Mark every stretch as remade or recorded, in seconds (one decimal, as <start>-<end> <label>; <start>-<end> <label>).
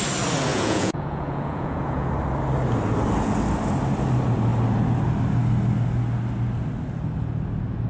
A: 0.0-0.5 recorded; 0.5-2.1 remade; 2.1-7.9 recorded